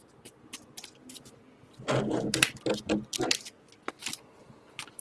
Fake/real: real